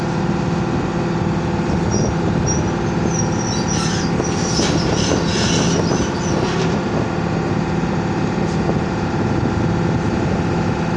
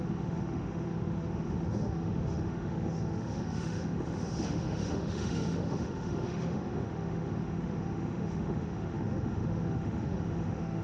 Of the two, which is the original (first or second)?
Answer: first